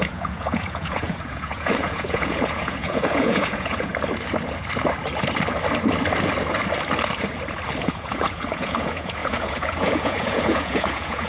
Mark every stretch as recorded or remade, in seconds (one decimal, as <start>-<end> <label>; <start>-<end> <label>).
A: 0.0-3.9 remade; 3.9-7.8 recorded; 7.8-11.3 remade